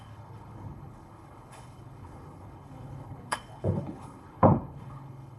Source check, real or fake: fake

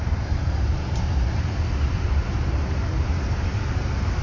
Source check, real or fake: real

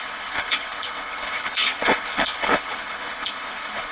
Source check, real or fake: fake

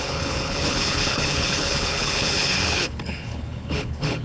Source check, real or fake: fake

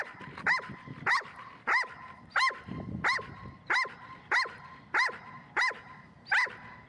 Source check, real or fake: real